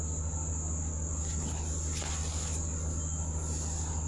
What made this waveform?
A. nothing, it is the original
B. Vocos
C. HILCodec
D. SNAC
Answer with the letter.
A